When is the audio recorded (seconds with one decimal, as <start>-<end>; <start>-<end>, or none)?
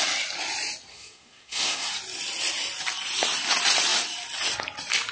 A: 0.0-0.9; 1.9-5.1